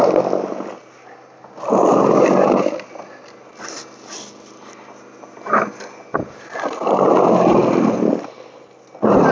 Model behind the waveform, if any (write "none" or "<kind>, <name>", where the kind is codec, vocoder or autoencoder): none